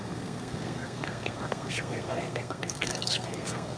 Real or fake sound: fake